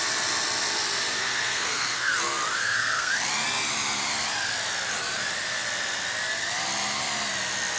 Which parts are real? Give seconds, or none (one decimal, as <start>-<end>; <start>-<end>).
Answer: 0.0-1.2; 2.1-2.6; 3.1-7.8